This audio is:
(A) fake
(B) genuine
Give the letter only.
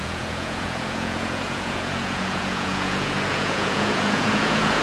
A